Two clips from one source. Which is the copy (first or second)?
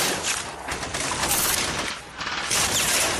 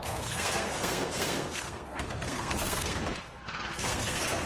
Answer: second